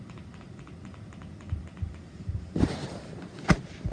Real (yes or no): yes